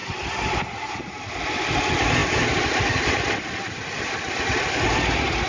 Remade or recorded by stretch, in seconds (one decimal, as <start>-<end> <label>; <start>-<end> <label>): 0.0-5.5 recorded